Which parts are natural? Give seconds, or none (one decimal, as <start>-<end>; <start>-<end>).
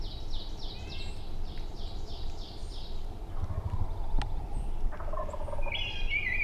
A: 0.0-6.4